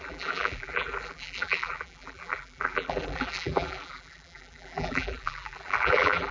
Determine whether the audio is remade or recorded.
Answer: remade